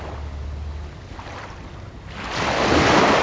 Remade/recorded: recorded